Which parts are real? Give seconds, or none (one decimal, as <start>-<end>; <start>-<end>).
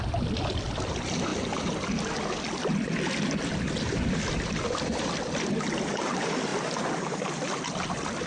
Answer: 0.0-8.3